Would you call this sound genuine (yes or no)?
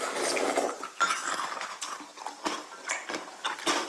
yes